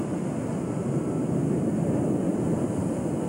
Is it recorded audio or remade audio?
recorded